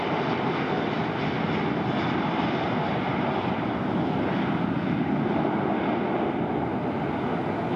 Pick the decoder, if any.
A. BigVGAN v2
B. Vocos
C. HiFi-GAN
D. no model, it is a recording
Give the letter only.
D